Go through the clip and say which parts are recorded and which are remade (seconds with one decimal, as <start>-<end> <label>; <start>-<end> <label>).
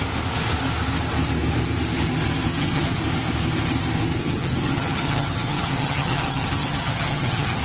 0.0-2.5 recorded; 2.5-3.0 remade; 3.0-4.2 recorded; 4.2-7.6 remade